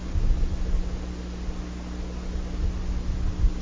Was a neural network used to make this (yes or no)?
no